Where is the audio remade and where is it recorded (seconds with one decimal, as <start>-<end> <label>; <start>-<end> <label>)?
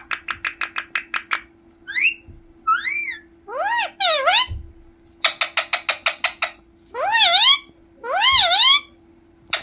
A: 0.0-9.6 recorded